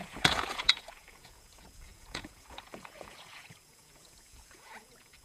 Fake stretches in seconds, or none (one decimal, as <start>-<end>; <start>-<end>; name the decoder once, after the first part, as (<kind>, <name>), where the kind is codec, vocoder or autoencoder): 0.0-5.2 (vocoder, Vocos)